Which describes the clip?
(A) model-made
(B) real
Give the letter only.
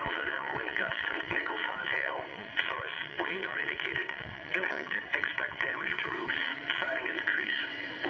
A